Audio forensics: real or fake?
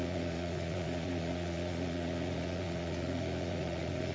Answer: fake